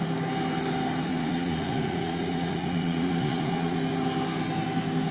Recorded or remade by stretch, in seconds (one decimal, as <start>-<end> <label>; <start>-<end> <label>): 0.0-1.1 recorded; 1.1-3.8 remade; 3.8-5.1 recorded